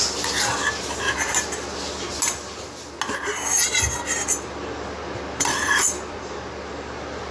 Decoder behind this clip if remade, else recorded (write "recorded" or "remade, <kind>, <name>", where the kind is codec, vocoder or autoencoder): recorded